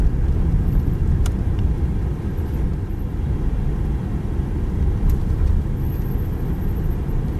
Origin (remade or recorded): recorded